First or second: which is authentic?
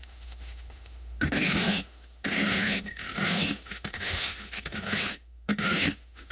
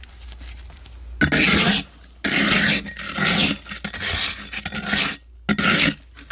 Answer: second